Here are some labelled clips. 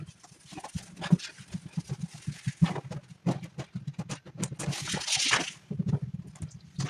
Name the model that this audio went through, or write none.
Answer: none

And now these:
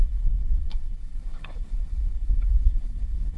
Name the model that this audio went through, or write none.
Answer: codec, HILCodec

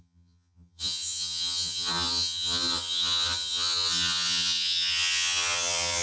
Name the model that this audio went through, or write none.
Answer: vocoder, HiFi-GAN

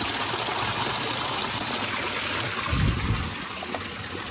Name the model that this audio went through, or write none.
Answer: none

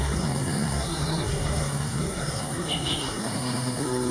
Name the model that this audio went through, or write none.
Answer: codec, SNAC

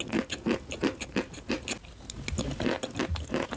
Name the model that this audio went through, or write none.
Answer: none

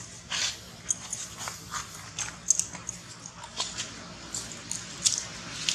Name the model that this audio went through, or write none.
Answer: none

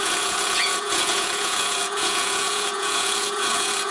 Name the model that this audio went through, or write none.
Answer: vocoder, Vocos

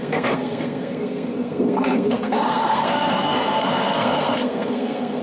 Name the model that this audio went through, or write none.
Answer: codec, SNAC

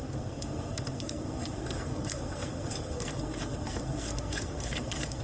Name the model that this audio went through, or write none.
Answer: codec, SNAC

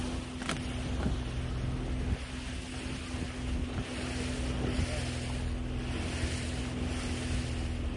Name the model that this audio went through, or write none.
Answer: none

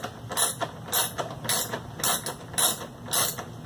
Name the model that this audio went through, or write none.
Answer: none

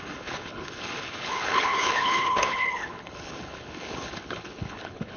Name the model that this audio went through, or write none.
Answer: codec, HILCodec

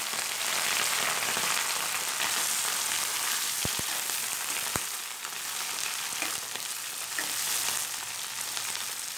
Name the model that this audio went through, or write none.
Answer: none